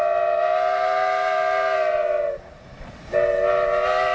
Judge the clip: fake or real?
real